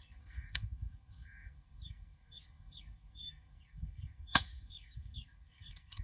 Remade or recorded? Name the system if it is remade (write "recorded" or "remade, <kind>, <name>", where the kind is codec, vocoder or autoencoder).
remade, codec, SNAC